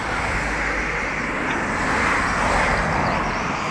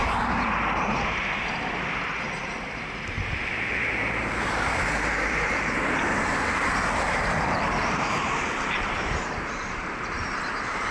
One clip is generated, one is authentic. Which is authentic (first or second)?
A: first